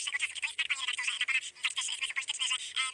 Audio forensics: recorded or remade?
recorded